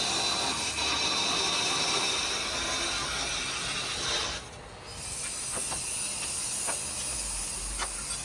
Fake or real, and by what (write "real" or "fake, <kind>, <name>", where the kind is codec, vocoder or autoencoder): real